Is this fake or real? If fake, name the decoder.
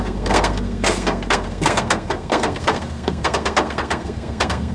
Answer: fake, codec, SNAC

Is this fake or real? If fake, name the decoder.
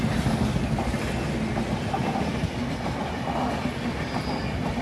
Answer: real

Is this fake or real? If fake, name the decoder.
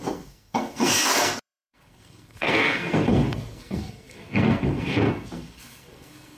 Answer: fake, codec, SNAC